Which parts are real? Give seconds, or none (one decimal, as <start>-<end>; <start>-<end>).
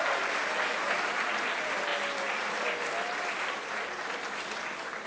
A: 0.0-5.1